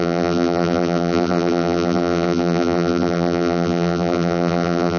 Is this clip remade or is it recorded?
remade